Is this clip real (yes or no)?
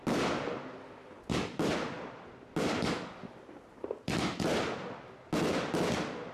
yes